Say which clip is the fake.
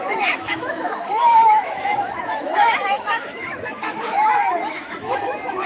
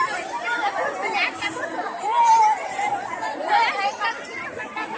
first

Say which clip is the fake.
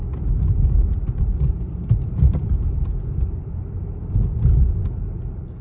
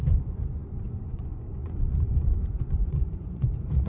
second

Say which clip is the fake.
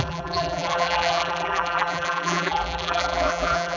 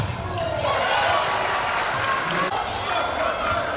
first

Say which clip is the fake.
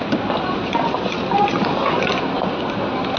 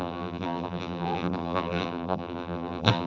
second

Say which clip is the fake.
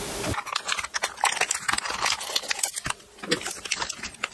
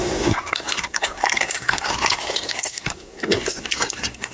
second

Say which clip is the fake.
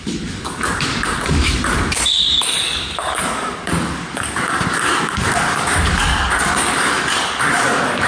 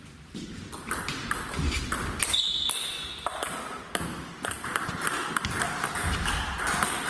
first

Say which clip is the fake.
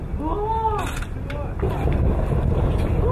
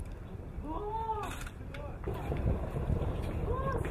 second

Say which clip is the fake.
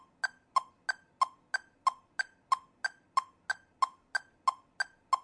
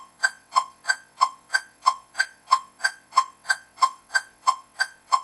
second